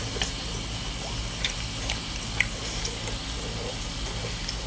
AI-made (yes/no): no